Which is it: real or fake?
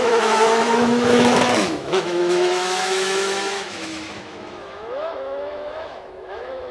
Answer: fake